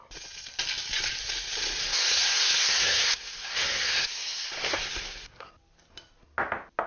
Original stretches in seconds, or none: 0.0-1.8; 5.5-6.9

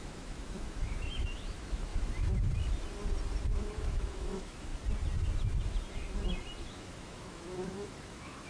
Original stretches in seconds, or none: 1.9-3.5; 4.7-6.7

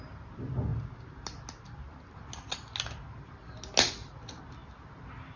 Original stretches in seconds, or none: 0.0-5.4